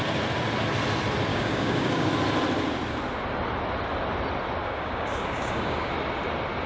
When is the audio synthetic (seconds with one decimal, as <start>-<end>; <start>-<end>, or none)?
1.3-2.1; 4.6-5.9